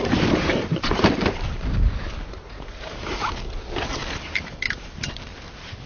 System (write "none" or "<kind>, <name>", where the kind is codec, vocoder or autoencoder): vocoder, BigVGAN v2